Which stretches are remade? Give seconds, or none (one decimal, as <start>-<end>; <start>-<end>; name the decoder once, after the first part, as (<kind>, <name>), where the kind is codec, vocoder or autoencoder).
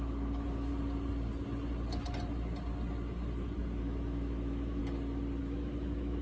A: 0.0-0.7 (autoencoder, DAC-VAE); 3.8-4.8; 5.4-6.2